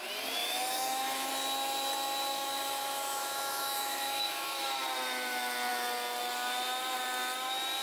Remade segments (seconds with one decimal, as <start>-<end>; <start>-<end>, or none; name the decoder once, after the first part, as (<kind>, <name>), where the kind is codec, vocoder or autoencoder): 0.4-1.3 (autoencoder, DAC-VAE); 2.3-4.8